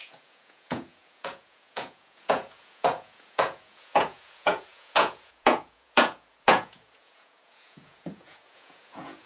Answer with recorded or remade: remade